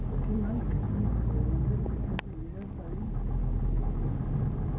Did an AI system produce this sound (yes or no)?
no